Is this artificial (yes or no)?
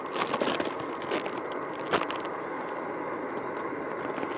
no